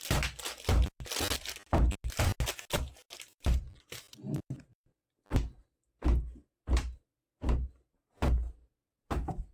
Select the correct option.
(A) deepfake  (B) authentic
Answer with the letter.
B